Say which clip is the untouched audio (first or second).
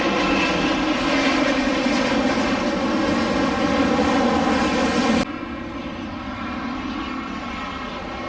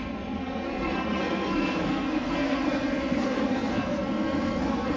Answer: first